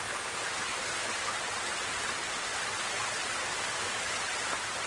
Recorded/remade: recorded